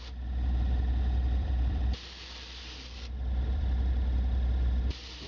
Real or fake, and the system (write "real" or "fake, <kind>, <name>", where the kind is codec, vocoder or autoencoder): fake, vocoder, BigVGAN v2